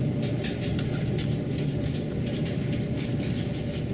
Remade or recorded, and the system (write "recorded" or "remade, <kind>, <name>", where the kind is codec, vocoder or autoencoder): recorded